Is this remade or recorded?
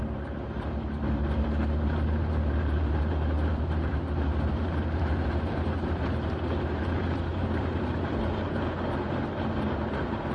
remade